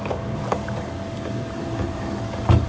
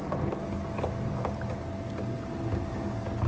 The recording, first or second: second